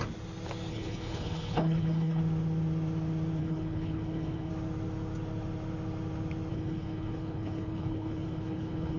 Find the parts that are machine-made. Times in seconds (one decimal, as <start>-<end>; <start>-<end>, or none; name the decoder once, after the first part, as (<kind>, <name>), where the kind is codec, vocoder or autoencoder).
0.7-2.2 (codec, HILCodec); 3.4-4.5; 6.5-9.0